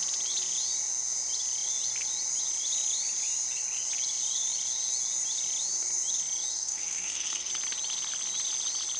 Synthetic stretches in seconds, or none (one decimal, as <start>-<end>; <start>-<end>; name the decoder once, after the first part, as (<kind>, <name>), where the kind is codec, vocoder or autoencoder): 6.5-7.5 (codec, SNAC)